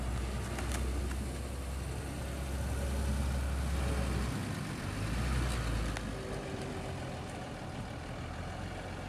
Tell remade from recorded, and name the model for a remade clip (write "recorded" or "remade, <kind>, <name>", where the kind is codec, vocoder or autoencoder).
recorded